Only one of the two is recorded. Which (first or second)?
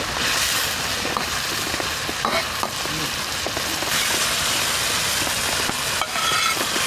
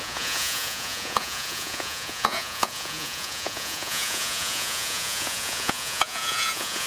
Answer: first